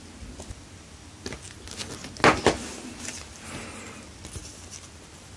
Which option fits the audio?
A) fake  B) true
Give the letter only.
B